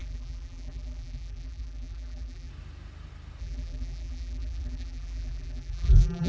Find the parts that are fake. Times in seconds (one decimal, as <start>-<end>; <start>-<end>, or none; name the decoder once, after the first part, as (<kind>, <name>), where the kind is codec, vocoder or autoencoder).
0.0-2.5 (vocoder, BigVGAN v2); 3.4-6.3